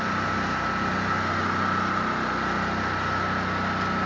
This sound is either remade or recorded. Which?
recorded